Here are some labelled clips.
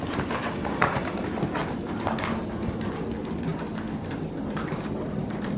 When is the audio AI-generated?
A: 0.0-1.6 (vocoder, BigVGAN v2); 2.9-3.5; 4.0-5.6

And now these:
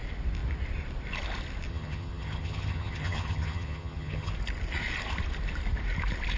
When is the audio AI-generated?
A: 1.7-4.3 (vocoder, HiFi-GAN)